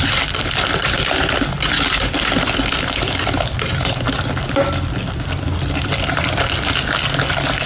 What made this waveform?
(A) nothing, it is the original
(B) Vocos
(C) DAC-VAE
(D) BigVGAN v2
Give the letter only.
A